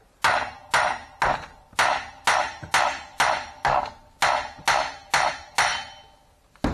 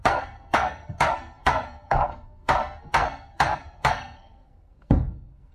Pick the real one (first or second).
first